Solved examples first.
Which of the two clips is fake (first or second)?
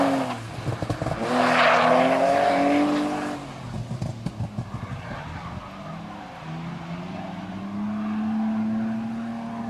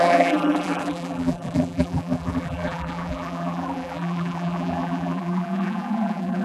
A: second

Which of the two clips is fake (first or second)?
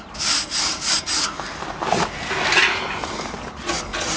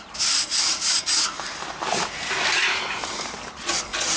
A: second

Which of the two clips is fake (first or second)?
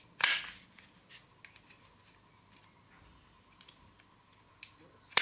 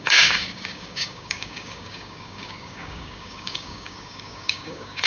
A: second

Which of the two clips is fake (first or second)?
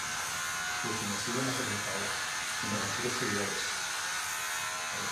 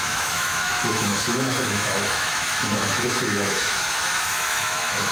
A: second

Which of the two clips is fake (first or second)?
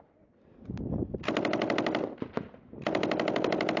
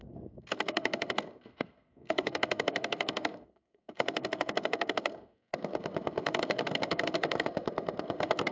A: second